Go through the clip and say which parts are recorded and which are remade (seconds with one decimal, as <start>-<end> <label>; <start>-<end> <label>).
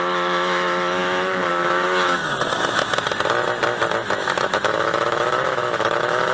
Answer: 0.0-2.2 remade; 2.2-4.1 recorded; 4.1-6.3 remade